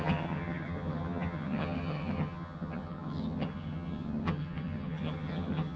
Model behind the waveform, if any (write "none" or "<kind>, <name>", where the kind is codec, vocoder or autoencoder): vocoder, HiFi-GAN